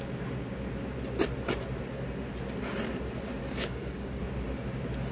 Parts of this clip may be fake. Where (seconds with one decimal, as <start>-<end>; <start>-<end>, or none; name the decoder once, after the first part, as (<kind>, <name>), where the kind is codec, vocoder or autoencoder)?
3.4-4.2 (codec, DAC)